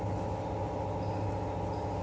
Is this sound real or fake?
real